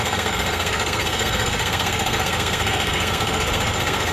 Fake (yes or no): yes